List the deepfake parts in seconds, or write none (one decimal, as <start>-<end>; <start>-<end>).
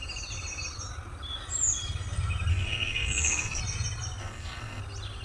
2.5-3.6; 4.2-4.8